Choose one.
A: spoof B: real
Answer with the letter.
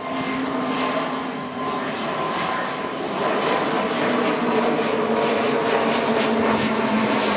B